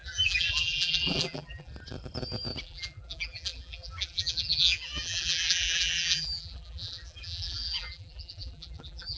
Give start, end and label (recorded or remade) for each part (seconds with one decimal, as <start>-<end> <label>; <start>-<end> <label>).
0.0-1.7 remade; 1.7-2.6 recorded; 2.6-9.2 remade